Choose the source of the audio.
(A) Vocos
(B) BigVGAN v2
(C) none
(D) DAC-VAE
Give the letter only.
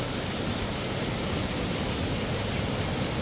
C